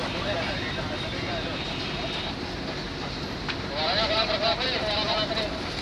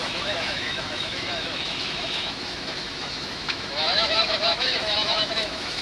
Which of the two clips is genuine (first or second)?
first